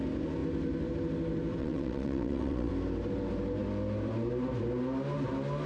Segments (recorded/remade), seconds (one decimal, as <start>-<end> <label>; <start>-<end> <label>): 0.0-1.6 recorded; 1.6-2.7 remade; 2.7-5.7 recorded